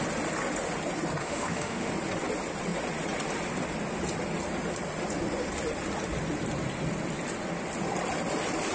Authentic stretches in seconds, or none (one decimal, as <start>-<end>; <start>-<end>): 0.0-1.2; 1.9-8.7